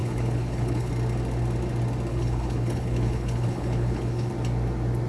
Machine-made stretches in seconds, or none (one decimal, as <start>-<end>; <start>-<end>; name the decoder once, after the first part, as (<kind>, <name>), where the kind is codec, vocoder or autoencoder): 0.0-0.9 (codec, HILCodec); 2.1-4.3